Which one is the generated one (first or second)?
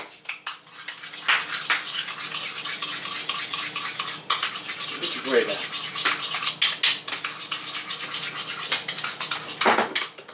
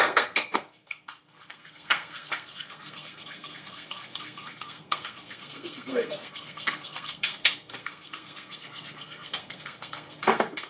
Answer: second